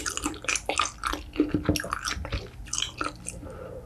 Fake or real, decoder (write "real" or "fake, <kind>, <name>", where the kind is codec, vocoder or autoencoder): real